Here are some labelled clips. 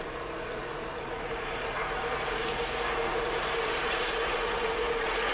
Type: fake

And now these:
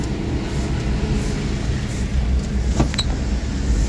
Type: real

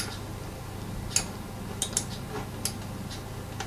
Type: real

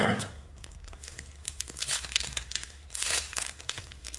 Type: fake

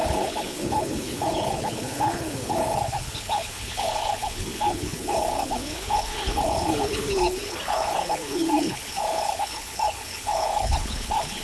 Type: fake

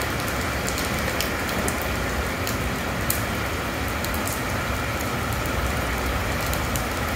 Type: real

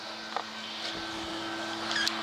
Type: real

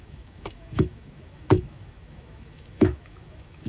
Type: fake